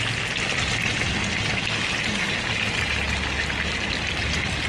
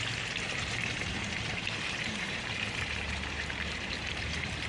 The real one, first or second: first